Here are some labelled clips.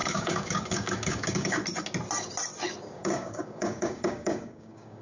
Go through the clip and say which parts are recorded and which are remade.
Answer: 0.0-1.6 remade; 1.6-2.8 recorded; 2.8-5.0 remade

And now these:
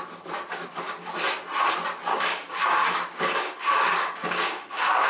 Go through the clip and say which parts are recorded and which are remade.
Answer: 0.0-0.5 recorded; 0.5-1.1 remade; 1.1-2.1 recorded; 2.1-5.1 remade

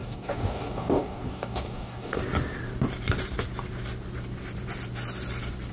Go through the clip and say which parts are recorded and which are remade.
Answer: 0.0-2.2 remade; 2.2-5.7 recorded

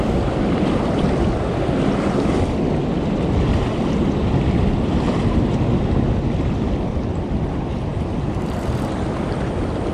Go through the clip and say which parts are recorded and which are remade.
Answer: 0.0-9.9 recorded

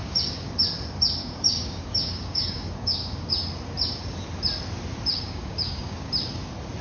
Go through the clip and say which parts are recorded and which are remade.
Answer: 0.0-0.5 remade; 0.5-1.2 recorded; 1.2-3.3 remade; 3.3-5.1 recorded; 5.1-6.1 remade; 6.1-6.8 recorded

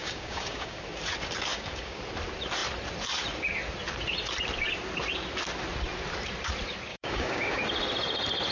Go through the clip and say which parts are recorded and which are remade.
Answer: 0.0-0.8 remade; 0.8-1.5 recorded; 1.5-2.0 remade; 2.0-6.9 recorded; 6.9-7.6 remade; 7.6-8.5 recorded

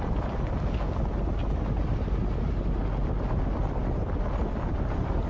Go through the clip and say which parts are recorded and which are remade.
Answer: 0.0-5.3 recorded

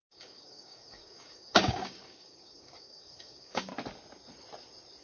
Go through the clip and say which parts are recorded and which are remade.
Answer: 0.0-3.7 remade; 3.7-5.0 recorded